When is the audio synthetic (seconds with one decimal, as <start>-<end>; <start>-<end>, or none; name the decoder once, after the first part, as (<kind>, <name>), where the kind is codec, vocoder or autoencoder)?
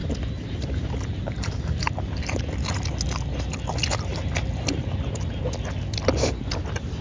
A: 0.0-2.8 (vocoder, BigVGAN v2)